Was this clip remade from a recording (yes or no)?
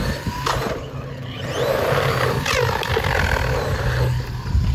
no